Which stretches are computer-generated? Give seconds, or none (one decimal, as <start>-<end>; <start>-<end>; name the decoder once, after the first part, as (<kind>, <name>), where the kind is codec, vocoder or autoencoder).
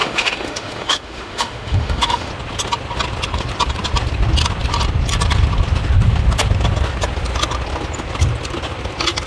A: 0.0-2.3 (autoencoder, DAC-VAE)